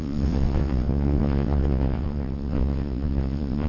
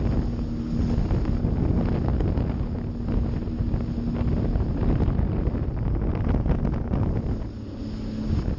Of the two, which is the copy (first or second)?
first